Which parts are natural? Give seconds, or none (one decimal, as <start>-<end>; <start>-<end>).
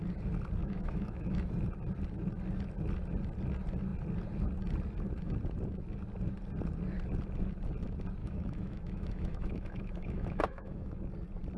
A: 0.0-0.6; 1.5-8.2; 11.0-11.6